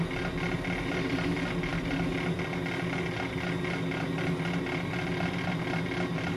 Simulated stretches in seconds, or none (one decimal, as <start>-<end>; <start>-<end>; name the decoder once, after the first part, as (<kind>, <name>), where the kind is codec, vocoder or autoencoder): none